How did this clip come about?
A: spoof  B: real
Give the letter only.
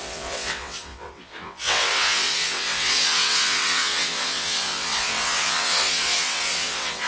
A